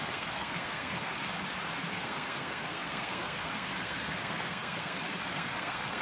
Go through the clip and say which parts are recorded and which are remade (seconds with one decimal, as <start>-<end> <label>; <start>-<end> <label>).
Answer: 0.0-1.1 remade; 1.1-1.9 recorded; 1.9-6.0 remade